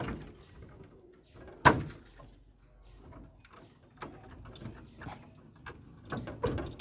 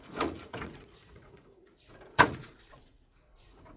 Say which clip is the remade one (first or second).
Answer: second